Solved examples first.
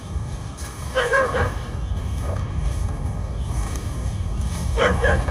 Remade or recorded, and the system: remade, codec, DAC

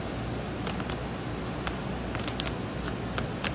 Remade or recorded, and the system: recorded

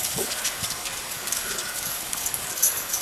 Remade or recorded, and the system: remade, codec, DAC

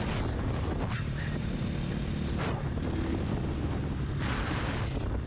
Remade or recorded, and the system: recorded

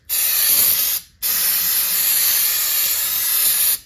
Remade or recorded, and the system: recorded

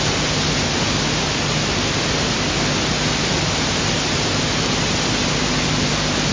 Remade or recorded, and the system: recorded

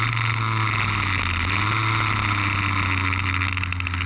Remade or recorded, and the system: recorded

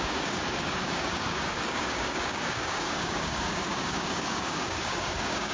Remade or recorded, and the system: remade, codec, DAC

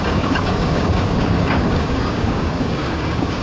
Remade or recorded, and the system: remade, codec, DAC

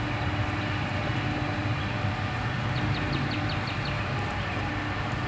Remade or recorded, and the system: recorded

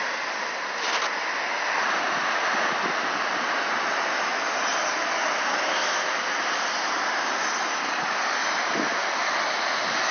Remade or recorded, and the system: recorded